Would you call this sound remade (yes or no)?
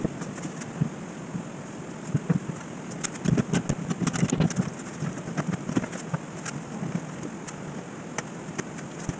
no